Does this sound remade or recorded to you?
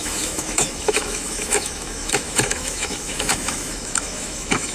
remade